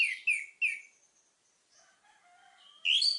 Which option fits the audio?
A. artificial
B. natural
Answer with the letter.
B